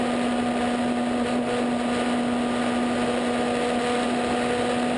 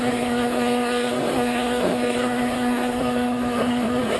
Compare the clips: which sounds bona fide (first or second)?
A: first